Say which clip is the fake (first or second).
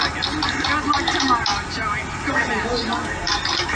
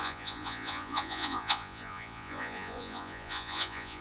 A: second